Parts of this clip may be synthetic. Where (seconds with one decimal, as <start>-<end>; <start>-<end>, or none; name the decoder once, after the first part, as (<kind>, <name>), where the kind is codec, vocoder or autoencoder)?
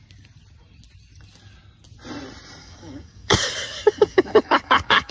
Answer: 2.6-5.1 (codec, DAC)